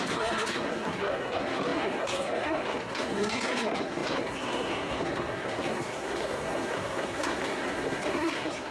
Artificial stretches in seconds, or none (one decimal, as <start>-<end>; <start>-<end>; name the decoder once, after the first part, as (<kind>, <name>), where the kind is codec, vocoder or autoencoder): 0.0-8.7 (codec, SNAC)